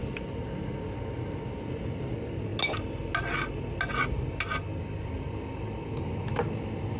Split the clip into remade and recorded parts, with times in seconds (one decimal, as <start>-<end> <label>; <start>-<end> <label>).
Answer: 0.0-7.0 recorded